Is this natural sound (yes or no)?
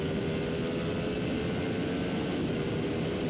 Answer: yes